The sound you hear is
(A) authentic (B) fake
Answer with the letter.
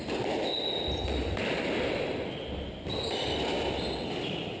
A